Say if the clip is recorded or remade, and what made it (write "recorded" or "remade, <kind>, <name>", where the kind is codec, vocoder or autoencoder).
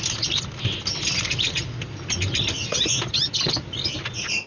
recorded